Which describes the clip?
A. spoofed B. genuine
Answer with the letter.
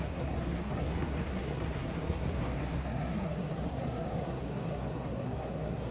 A